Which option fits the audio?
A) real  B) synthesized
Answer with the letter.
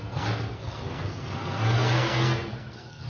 B